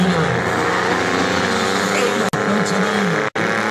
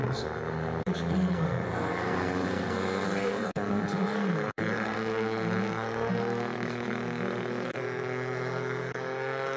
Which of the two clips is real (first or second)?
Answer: first